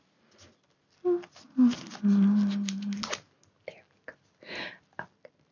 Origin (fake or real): real